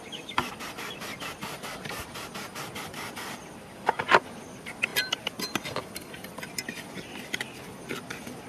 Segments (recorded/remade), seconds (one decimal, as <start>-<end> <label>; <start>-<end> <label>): 0.0-2.5 recorded; 2.5-4.0 remade; 4.0-4.9 recorded; 4.9-7.3 remade; 7.3-8.5 recorded